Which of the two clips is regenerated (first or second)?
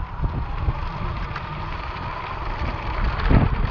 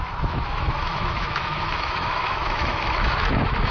second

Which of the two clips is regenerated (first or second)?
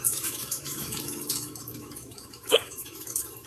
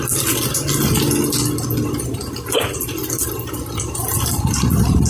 first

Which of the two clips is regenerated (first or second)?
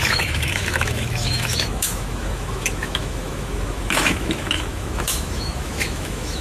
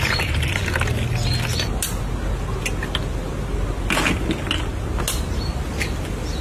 first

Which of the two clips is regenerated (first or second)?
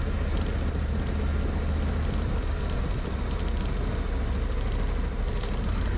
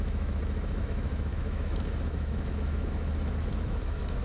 second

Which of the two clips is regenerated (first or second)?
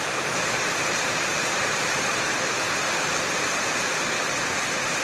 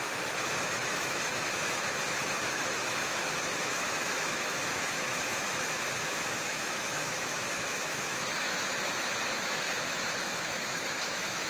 second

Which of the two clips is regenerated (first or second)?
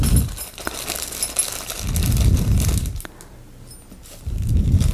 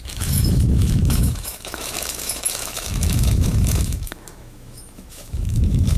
second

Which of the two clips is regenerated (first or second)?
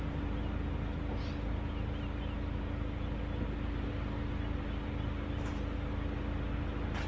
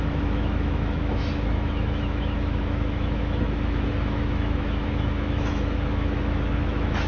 second